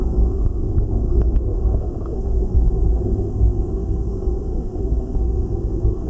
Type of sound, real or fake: fake